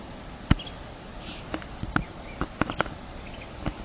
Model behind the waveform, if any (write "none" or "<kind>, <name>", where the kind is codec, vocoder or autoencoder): none